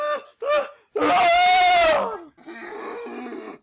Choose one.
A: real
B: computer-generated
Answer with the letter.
A